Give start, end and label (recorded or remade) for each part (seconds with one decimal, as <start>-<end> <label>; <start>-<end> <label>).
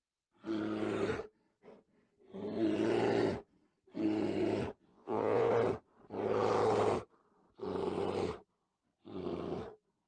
0.0-4.9 recorded; 4.9-5.5 remade; 5.5-10.1 recorded